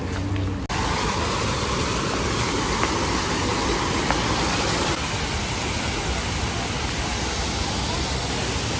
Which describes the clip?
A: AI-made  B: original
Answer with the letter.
B